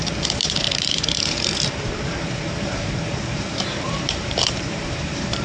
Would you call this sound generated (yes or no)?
yes